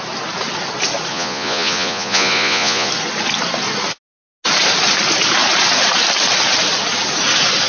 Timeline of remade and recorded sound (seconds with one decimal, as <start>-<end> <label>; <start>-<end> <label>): 0.0-1.1 recorded; 1.1-2.9 remade; 2.9-7.7 recorded